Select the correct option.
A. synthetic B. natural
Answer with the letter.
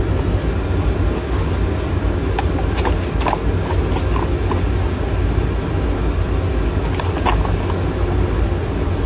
B